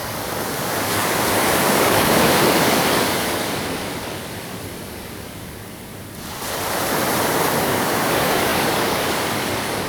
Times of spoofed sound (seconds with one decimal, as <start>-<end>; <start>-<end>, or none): 0.0-5.9; 7.6-9.9

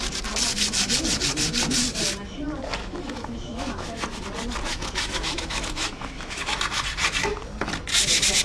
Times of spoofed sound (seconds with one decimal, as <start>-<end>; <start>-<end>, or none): 2.8-4.2; 4.7-6.5

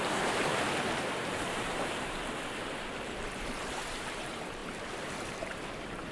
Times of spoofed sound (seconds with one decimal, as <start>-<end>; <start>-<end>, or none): 0.0-0.5; 2.6-6.1

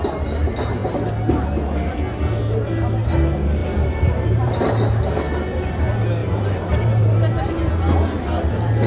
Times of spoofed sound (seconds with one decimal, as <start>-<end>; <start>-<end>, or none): 3.6-4.7; 6.2-7.7

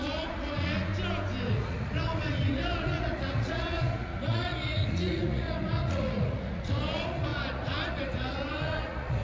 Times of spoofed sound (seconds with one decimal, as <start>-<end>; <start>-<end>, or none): 0.0-0.9; 1.5-9.2